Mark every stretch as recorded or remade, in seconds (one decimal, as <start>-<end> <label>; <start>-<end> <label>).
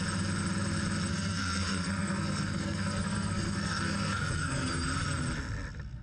0.0-1.1 recorded; 1.1-4.7 remade; 4.7-6.0 recorded